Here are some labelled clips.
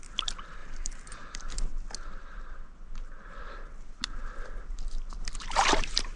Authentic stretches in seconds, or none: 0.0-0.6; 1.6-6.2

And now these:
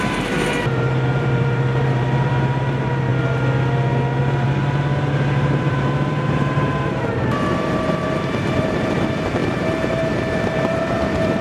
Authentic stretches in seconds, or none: 3.1-4.2

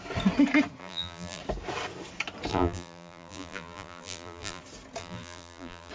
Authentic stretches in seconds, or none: 0.0-0.8; 1.4-2.5; 4.6-5.0

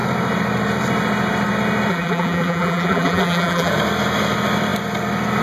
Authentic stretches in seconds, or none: 0.0-1.9; 3.7-5.4

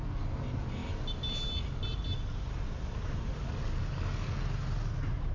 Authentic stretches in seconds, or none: 0.0-5.3

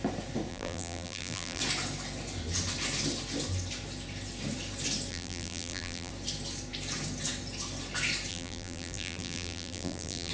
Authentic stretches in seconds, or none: 0.0-0.5; 1.6-5.1; 6.1-8.3

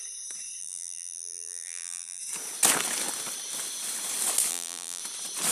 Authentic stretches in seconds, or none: 0.0-0.6; 2.2-4.5; 5.0-5.5